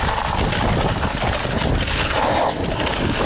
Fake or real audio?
real